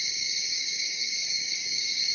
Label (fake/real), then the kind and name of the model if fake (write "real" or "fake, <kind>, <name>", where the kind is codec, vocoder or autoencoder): fake, codec, DAC